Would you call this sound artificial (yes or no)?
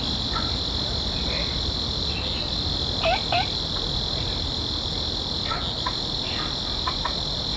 no